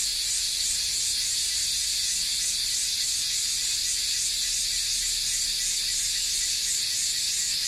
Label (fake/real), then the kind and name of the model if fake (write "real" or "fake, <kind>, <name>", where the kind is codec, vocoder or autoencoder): real